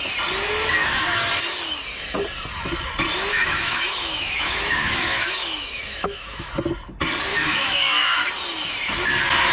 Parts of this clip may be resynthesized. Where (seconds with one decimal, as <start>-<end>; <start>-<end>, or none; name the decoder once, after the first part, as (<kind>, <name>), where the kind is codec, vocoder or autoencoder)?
0.8-1.3 (autoencoder, DAC-VAE); 3.3-6.5; 7.3-8.3